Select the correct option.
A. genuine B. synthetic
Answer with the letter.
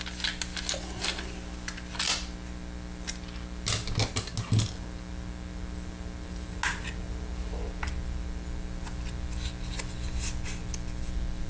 A